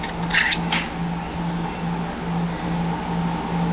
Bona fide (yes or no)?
yes